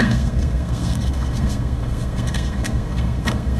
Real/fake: fake